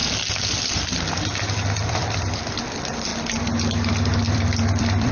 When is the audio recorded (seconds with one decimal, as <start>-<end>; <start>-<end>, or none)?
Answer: 0.0-1.7; 3.1-4.2